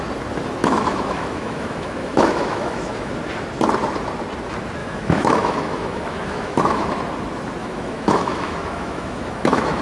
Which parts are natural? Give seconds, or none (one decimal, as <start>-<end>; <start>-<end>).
0.0-0.6; 3.1-4.8; 7.0-7.6